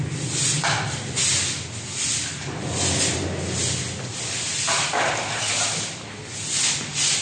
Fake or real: real